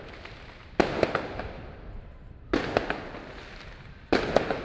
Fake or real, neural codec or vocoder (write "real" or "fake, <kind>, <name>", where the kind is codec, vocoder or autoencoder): real